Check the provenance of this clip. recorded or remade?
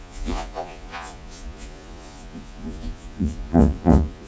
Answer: remade